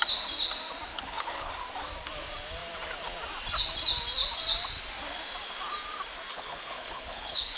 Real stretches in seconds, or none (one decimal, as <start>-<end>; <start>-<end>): 0.0-0.9; 1.5-6.3